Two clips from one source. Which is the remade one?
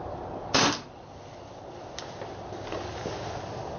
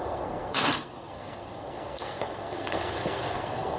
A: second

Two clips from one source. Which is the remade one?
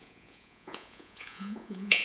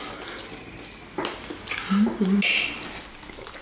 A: first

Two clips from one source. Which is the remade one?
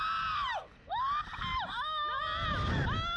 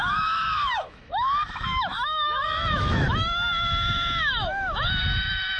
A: second